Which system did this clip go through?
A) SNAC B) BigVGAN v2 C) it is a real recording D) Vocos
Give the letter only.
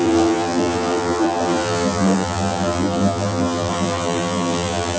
B